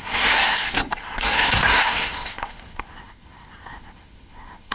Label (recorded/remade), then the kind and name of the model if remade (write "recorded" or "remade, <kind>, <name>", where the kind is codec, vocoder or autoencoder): remade, codec, SNAC